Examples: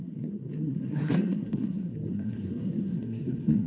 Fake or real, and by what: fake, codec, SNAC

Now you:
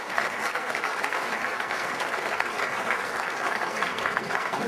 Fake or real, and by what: fake, codec, SNAC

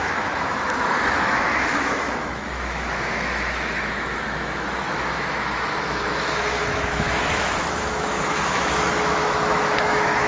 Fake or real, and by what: fake, autoencoder, DAC-VAE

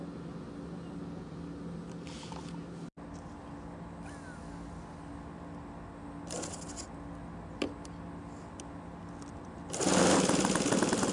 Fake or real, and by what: real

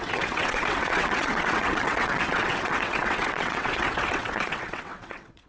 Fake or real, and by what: fake, vocoder, WaveNeXt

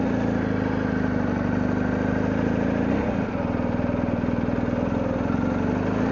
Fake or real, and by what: real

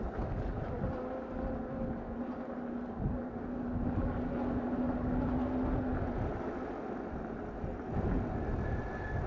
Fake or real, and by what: real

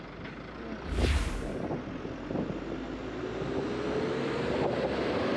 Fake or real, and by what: real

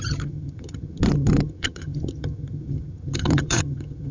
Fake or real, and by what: fake, vocoder, HiFi-GAN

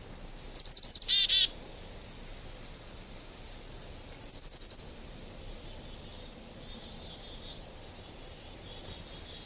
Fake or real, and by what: real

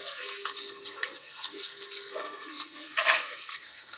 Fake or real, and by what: fake, codec, SNAC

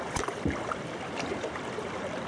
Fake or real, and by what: fake, vocoder, BigVGAN v2